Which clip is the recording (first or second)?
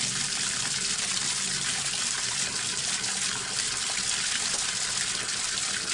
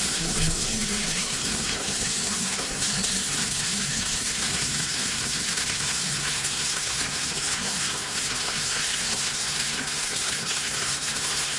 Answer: first